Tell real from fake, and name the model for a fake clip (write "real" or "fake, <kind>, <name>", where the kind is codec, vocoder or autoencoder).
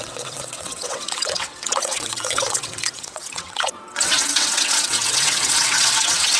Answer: fake, vocoder, WaveNeXt